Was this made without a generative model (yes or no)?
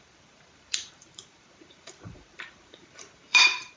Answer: no